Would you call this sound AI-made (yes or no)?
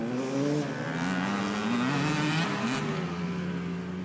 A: no